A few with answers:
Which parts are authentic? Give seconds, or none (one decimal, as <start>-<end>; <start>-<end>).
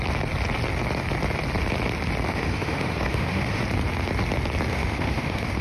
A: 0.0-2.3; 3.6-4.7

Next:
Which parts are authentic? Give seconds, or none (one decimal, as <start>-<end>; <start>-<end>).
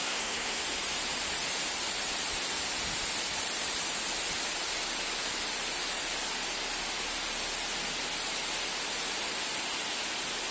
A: 0.6-10.5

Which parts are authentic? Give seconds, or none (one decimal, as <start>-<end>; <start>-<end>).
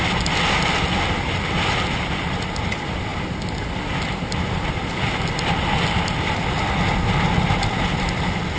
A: 0.0-8.6